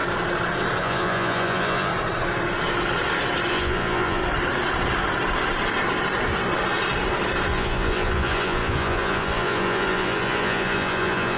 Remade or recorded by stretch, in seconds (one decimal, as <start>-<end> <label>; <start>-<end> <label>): 0.0-0.8 recorded; 0.8-1.9 remade; 1.9-3.5 recorded; 3.5-4.2 remade; 4.2-7.5 recorded; 7.5-11.4 remade